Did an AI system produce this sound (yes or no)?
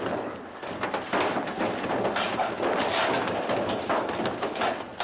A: no